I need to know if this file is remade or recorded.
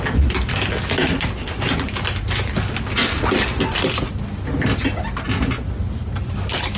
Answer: recorded